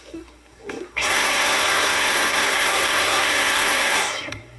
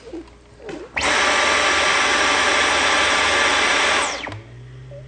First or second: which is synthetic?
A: first